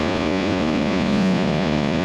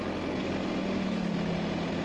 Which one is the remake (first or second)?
first